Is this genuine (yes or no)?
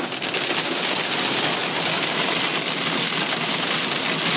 yes